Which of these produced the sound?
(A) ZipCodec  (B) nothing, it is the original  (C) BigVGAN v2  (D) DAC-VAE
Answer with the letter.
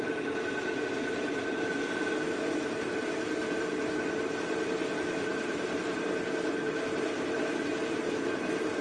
C